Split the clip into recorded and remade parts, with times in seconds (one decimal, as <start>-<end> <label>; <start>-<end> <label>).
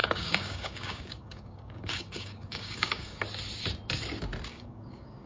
0.0-3.2 remade; 3.2-4.5 recorded; 4.5-5.3 remade